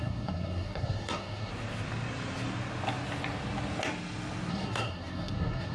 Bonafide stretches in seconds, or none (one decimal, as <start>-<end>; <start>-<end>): 1.5-4.5